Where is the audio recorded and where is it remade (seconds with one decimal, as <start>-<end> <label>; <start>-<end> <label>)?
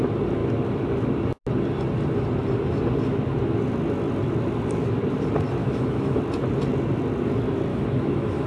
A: 0.0-5.6 recorded; 5.6-6.2 remade; 6.2-7.7 recorded; 7.7-8.5 remade